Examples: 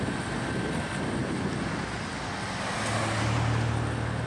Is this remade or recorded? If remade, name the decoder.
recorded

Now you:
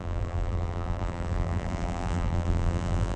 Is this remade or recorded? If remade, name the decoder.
remade, vocoder, BigVGAN v2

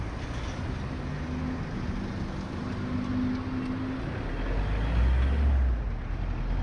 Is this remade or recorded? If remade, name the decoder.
recorded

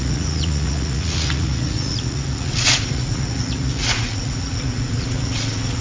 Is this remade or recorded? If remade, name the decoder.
remade, vocoder, Vocos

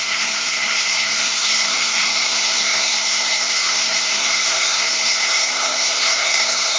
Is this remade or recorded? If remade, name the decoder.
remade, codec, SNAC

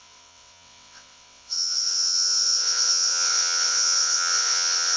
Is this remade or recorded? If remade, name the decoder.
remade, vocoder, WaveNeXt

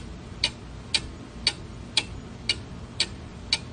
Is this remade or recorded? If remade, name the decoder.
recorded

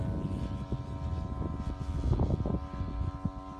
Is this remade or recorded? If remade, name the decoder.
recorded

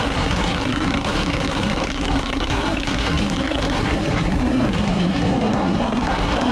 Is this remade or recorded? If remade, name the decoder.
remade, codec, SNAC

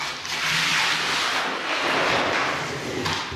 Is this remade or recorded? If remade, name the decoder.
recorded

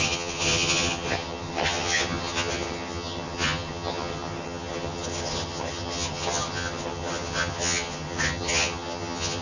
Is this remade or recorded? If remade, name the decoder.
remade, vocoder, HiFi-GAN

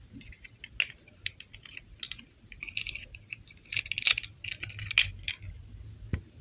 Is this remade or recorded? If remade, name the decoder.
recorded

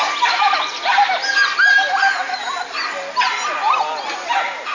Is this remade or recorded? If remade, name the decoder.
recorded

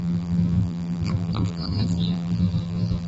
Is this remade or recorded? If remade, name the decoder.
remade, vocoder, BigVGAN v2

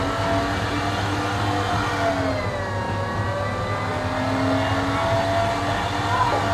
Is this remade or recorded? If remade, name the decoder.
recorded